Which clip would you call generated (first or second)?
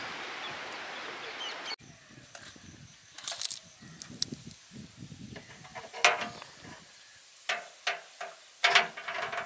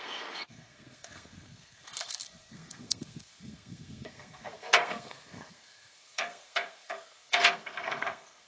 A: second